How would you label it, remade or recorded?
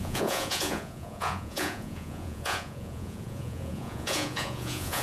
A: remade